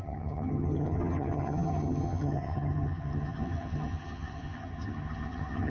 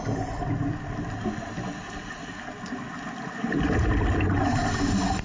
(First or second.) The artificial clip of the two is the first